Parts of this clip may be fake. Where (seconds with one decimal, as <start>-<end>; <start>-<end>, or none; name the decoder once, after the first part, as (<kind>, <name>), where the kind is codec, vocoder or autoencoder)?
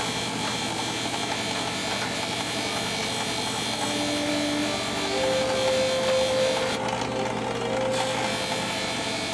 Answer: none